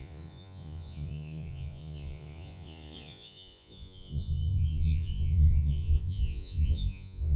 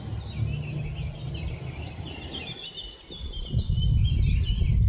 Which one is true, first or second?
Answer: second